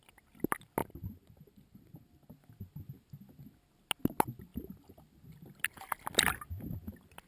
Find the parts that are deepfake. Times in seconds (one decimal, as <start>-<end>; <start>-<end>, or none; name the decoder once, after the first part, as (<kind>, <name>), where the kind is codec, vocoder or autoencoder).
none